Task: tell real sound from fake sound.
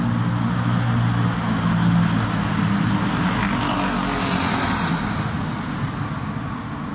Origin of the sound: real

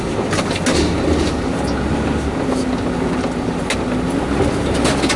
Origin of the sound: real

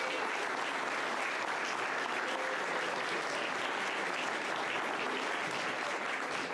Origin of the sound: real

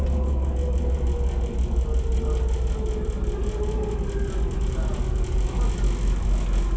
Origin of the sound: real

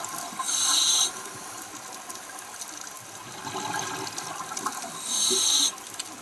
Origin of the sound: real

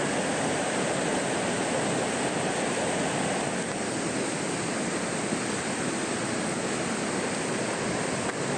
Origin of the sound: real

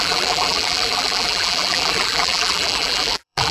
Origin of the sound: fake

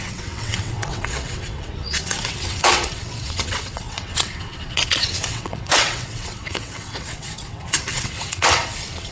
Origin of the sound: fake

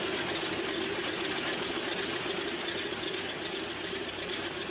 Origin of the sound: real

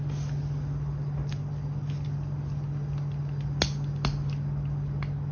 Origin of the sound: real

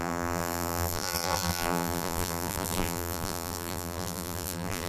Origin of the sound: fake